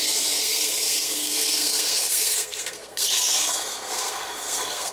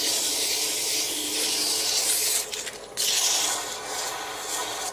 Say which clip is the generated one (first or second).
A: first